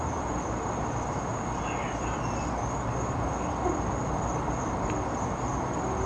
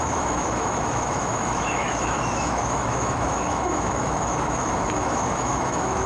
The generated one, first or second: second